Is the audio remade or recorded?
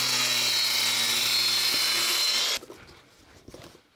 recorded